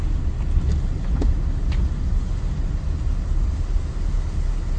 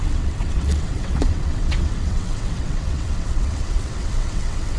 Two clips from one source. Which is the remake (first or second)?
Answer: second